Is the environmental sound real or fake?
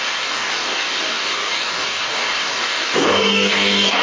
fake